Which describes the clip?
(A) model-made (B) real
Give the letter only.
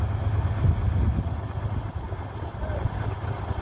B